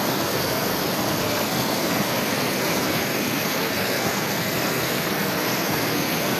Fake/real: fake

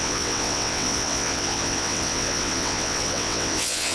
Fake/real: fake